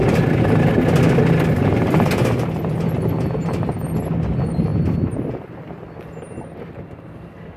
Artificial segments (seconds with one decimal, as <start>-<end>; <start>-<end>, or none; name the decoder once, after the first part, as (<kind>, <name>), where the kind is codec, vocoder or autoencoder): none

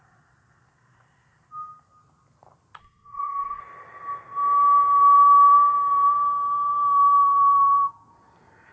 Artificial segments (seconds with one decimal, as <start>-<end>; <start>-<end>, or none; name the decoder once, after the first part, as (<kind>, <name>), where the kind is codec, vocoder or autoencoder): 2.8-3.6 (codec, SNAC)

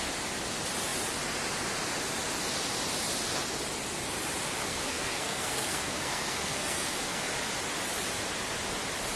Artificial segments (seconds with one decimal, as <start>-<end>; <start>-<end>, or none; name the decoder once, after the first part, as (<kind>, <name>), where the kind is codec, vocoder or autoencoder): 4.6-7.3 (codec, SNAC)

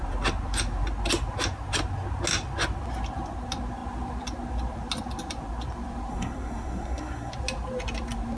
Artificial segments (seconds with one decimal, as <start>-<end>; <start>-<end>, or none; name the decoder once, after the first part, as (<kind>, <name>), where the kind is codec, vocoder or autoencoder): 6.1-7.3 (codec, SNAC)